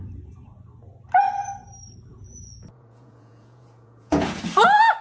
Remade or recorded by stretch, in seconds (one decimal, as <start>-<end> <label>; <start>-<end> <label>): 0.0-2.1 recorded; 2.1-4.4 remade; 4.4-5.0 recorded